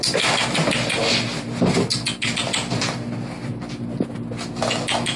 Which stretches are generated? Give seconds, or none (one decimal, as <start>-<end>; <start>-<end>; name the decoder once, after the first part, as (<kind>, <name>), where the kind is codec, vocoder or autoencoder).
none